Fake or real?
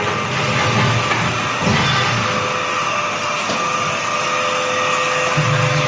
real